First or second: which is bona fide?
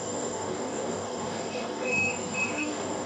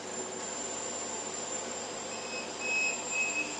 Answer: second